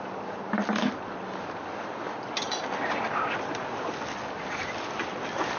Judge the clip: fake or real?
real